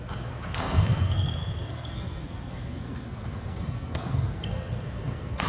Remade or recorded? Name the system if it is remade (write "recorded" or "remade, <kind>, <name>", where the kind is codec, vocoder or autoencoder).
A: remade, codec, SNAC